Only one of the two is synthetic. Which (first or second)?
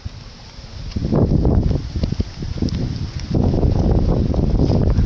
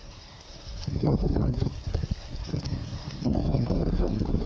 second